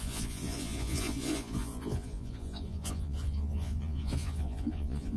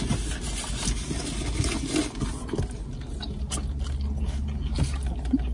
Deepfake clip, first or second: first